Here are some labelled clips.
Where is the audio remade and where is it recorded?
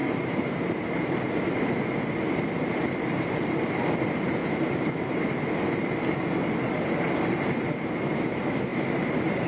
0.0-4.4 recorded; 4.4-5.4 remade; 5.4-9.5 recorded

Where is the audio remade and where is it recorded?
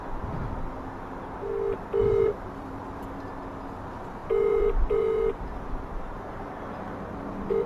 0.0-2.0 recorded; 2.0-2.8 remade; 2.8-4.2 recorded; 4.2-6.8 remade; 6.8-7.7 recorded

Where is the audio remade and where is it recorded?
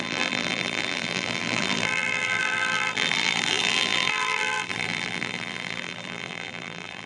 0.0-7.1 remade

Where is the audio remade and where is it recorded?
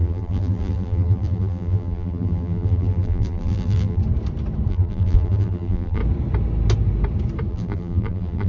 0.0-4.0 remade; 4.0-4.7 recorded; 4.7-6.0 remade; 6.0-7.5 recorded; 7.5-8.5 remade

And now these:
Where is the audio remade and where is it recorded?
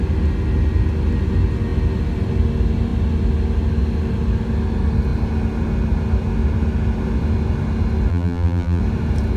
0.0-8.1 recorded; 8.1-8.8 remade; 8.8-9.4 recorded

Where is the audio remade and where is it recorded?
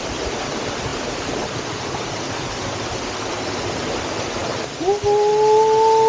0.0-4.4 remade; 4.4-6.1 recorded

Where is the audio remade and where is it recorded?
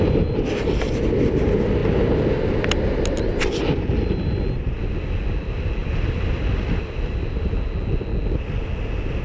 0.0-5.8 recorded; 5.8-7.5 remade; 7.5-9.2 recorded